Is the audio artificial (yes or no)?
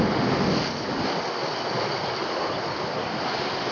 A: no